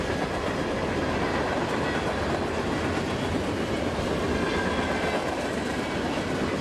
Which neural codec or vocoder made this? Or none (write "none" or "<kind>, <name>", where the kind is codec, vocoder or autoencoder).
none